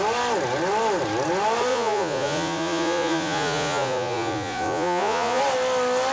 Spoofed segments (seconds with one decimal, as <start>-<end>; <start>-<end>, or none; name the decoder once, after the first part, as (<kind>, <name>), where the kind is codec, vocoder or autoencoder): 1.7-5.4 (vocoder, Vocos)